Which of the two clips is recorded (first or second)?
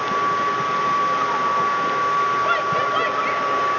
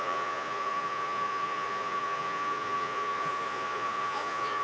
first